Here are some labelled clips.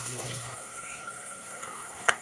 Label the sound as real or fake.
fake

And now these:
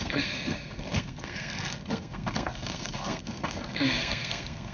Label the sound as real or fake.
fake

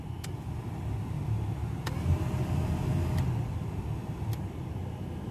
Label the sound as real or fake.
real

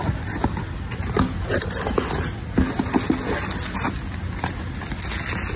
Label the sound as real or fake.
real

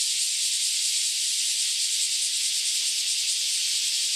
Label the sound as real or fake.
real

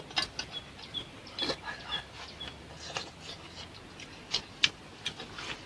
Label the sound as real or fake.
real